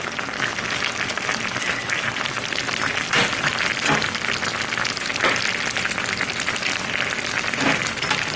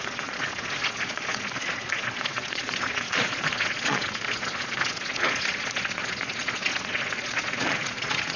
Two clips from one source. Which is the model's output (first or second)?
second